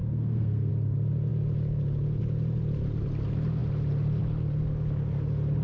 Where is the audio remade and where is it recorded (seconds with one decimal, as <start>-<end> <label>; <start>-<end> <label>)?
0.0-0.7 remade; 0.7-5.6 recorded